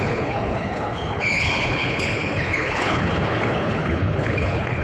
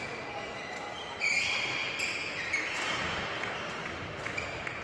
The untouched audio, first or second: second